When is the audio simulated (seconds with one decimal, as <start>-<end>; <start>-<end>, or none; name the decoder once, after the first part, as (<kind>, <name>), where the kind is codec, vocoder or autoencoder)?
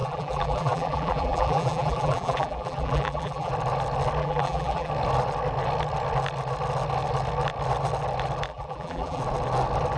0.0-3.5 (vocoder, BigVGAN v2); 4.2-4.9; 8.5-9.2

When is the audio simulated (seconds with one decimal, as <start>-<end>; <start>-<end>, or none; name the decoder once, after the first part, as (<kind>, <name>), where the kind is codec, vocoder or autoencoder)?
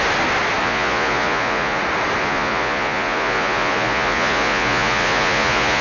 0.6-1.8 (vocoder, Vocos); 2.2-5.8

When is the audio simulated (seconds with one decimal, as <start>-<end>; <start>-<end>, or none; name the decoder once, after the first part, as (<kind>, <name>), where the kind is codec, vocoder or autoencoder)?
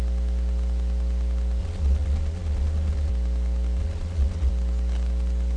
1.6-3.1 (vocoder, Vocos); 3.8-4.5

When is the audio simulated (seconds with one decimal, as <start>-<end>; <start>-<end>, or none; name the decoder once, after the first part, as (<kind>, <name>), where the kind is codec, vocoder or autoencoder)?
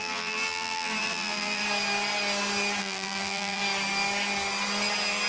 0.0-1.6 (vocoder, BigVGAN v2); 2.8-3.6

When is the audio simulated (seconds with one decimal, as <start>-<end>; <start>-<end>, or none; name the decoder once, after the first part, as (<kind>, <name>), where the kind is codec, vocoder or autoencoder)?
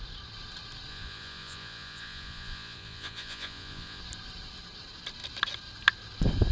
0.9-4.0 (vocoder, Vocos)